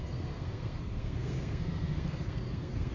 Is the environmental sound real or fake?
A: fake